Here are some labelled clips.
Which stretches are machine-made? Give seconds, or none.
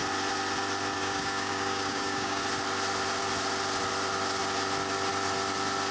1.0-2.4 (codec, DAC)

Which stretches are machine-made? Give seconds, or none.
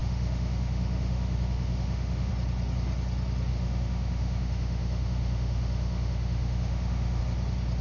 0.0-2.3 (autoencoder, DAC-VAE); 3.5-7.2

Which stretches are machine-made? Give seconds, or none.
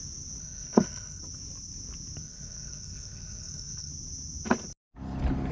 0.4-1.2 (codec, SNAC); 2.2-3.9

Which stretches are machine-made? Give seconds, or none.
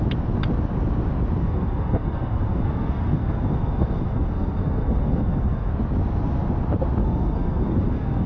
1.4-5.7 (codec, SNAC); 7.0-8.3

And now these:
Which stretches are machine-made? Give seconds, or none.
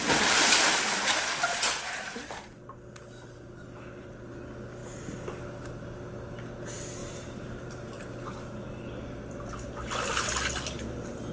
7.0-8.1 (vocoder, BigVGAN v2)